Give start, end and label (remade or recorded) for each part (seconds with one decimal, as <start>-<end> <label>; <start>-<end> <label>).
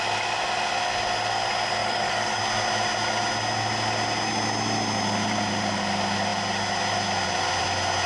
0.0-1.8 recorded; 1.8-2.4 remade; 2.4-8.1 recorded